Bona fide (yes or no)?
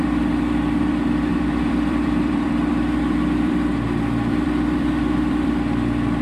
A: no